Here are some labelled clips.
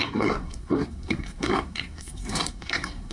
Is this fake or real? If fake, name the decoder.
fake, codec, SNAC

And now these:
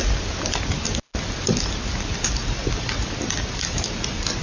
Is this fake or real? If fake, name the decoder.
real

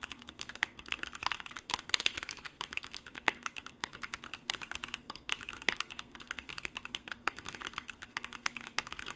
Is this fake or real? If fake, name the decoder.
fake, codec, SNAC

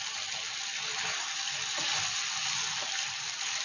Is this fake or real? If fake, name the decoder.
real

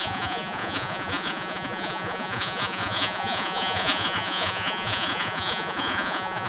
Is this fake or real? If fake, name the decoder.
fake, vocoder, Vocos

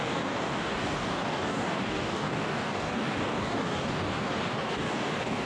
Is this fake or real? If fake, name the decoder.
fake, codec, DAC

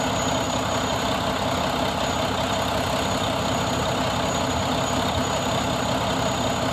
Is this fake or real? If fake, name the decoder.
real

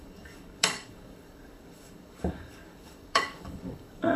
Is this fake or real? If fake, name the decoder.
fake, codec, DAC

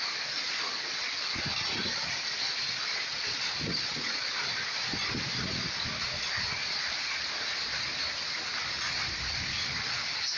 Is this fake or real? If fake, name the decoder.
real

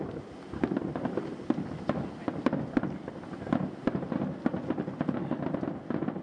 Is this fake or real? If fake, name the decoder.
real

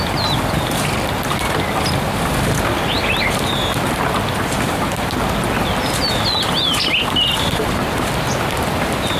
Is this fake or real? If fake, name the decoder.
real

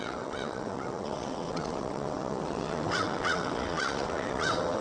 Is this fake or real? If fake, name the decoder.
fake, vocoder, WaveNeXt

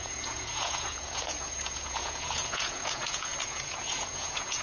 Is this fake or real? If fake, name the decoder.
fake, vocoder, Vocos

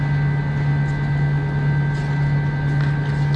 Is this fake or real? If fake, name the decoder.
real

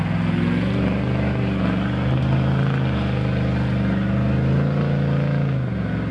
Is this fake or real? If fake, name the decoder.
real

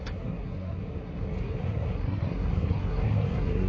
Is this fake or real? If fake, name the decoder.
fake, codec, SNAC